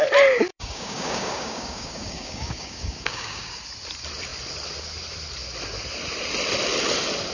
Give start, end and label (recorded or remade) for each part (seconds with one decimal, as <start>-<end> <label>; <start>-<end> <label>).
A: 0.0-0.5 recorded; 0.5-3.6 remade; 3.6-7.3 recorded